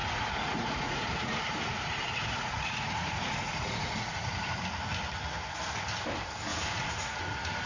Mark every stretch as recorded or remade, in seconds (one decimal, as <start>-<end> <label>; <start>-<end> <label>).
0.0-4.6 remade; 4.6-6.5 recorded; 6.5-7.2 remade; 7.2-7.7 recorded